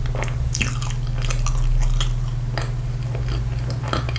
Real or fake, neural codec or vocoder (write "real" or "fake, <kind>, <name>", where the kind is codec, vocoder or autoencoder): real